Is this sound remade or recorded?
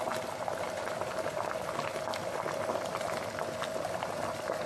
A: recorded